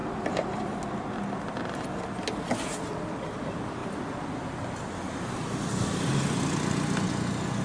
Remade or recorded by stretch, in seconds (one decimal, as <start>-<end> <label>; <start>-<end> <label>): 0.0-7.6 recorded